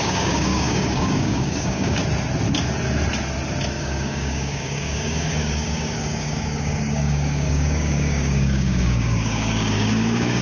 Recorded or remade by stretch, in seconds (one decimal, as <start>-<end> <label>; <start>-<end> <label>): 0.0-2.0 remade; 2.0-3.8 recorded; 3.8-10.4 remade